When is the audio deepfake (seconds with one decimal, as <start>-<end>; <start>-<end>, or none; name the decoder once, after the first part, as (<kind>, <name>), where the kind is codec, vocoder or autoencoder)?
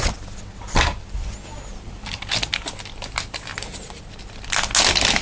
1.7-2.3 (vocoder, BigVGAN v2); 3.5-4.0